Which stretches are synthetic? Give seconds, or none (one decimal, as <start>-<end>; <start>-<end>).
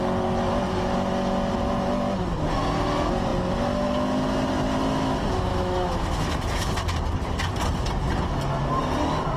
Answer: 5.5-6.7